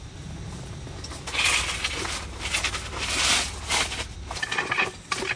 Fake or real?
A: real